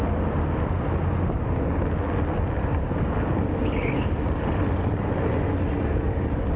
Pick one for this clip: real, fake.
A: real